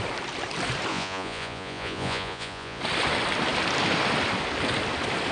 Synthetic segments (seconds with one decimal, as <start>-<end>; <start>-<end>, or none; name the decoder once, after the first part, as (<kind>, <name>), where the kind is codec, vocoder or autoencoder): 0.9-2.8 (vocoder, Vocos)